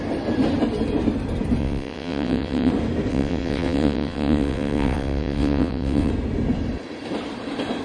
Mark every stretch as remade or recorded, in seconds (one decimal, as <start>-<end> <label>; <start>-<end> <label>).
0.0-1.6 recorded; 1.6-2.7 remade; 2.7-3.1 recorded; 3.1-6.1 remade; 6.1-7.8 recorded